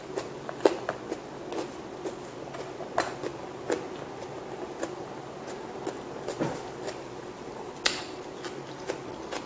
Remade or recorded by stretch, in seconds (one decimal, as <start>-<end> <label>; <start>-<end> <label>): 0.0-9.5 recorded